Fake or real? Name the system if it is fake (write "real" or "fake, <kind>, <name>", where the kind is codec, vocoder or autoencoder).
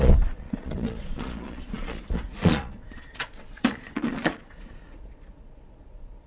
fake, vocoder, Vocos